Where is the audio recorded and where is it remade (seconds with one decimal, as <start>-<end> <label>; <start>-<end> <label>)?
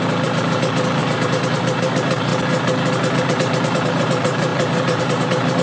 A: 0.0-2.3 remade; 2.3-3.2 recorded; 3.2-5.6 remade